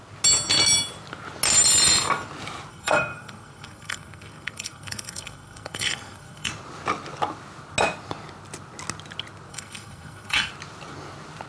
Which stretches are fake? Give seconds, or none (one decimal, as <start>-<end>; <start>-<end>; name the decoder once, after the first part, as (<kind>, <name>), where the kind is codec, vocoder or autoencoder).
2.7-6.5 (codec, SNAC); 9.5-10.5